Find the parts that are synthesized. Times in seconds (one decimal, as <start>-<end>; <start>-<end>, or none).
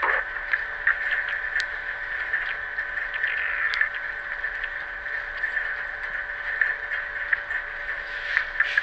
7.8-8.3